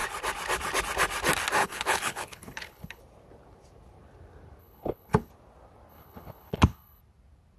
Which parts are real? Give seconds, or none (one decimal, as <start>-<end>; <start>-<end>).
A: 0.0-1.6; 3.0-4.6; 5.3-5.9; 7.0-7.6